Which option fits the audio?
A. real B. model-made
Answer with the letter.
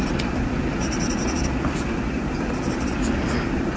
A